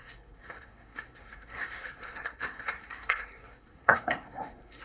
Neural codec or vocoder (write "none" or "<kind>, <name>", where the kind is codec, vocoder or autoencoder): codec, SNAC